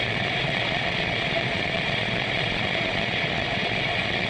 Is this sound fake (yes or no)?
yes